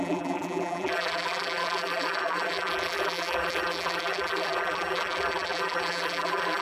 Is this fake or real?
fake